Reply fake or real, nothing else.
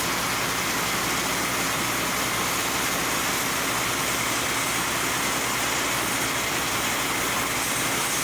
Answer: real